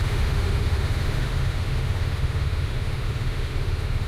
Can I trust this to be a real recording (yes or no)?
no